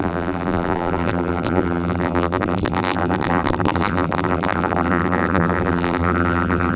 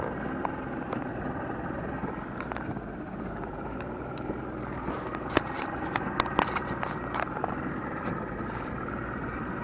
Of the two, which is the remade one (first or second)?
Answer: first